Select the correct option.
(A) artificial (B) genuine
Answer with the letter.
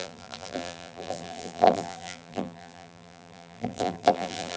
A